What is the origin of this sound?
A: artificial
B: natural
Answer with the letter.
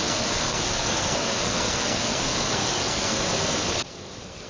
A